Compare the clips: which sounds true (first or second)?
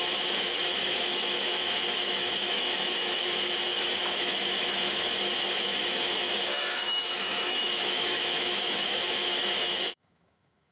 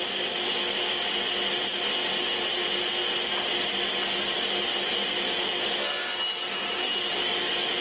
second